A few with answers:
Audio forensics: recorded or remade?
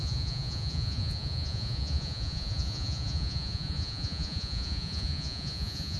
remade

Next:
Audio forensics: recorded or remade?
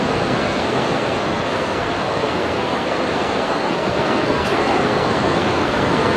remade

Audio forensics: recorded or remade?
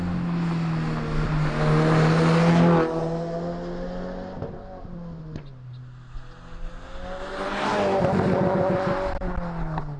recorded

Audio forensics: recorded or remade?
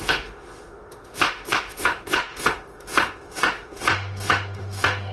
remade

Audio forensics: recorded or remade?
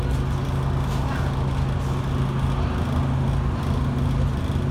recorded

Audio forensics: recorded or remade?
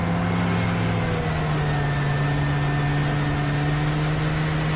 recorded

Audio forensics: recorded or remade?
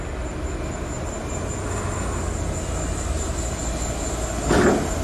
recorded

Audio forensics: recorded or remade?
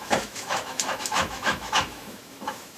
remade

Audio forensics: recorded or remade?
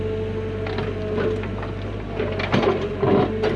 recorded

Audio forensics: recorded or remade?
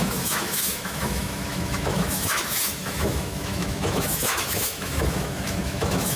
remade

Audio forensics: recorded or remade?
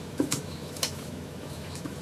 remade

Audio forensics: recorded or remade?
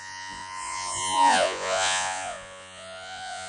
remade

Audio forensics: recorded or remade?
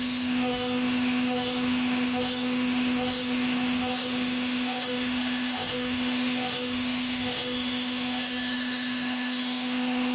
remade